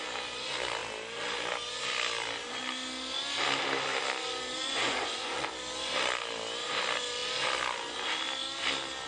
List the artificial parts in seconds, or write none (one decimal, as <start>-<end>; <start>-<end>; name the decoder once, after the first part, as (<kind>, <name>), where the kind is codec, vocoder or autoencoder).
4.6-5.5 (vocoder, Vocos)